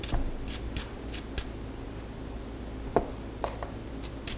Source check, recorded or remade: recorded